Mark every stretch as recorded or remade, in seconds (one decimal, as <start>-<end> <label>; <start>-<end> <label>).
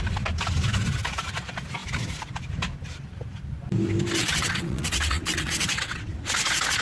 0.0-4.2 recorded; 4.2-6.1 remade; 6.1-6.8 recorded